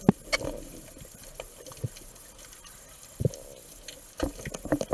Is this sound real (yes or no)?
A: yes